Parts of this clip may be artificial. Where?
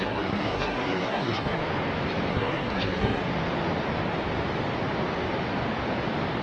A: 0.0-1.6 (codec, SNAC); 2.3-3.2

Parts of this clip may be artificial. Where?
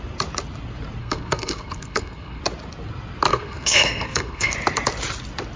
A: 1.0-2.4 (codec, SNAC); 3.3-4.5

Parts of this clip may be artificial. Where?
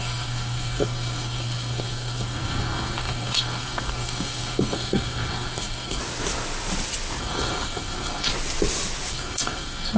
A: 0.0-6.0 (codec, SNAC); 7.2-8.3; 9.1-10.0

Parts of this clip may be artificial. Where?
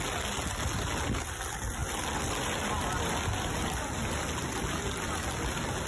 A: none